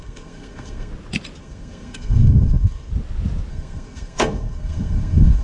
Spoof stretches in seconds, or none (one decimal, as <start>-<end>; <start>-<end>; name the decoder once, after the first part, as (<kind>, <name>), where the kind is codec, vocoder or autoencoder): 0.0-0.9 (codec, SNAC); 1.4-2.9; 3.5-5.4